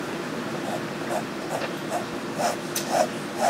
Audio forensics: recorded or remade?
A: recorded